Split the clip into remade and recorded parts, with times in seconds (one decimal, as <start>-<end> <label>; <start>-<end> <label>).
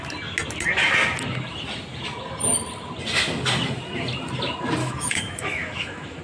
0.0-4.8 recorded; 4.8-6.2 remade